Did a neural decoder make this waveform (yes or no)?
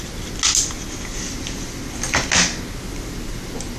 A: no